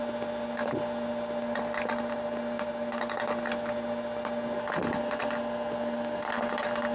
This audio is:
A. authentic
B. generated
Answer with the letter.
A